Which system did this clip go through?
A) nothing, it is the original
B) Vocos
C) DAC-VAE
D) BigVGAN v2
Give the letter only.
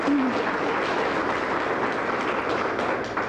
A